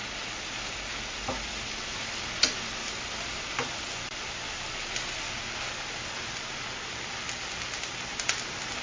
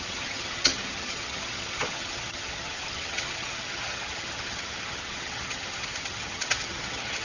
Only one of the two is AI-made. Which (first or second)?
second